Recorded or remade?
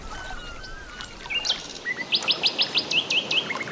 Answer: recorded